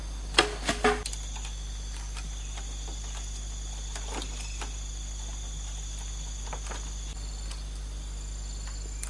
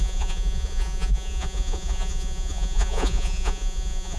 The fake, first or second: second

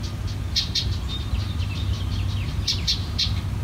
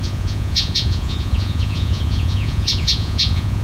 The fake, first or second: second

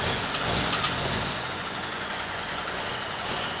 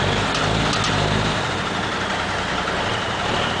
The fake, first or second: first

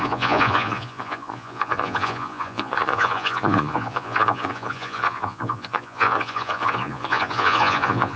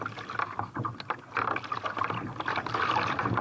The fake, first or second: first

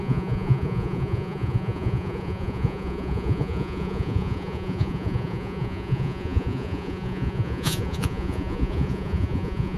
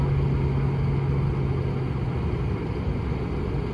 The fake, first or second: first